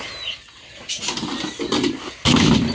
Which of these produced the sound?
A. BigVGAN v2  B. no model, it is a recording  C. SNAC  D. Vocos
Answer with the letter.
B